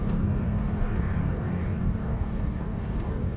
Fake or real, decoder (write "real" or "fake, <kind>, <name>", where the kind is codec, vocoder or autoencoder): fake, codec, DAC